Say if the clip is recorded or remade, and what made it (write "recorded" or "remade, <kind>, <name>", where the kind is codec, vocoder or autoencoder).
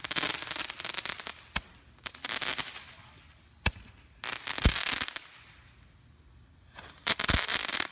recorded